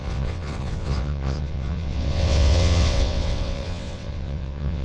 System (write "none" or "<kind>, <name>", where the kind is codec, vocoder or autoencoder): vocoder, WaveNeXt